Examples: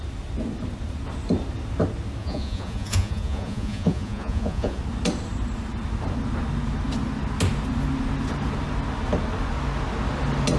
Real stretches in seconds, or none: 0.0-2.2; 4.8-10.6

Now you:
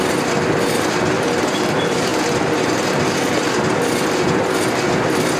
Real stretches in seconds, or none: 0.0-5.4

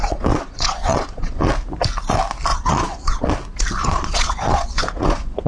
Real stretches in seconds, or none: 1.5-2.5; 3.3-3.8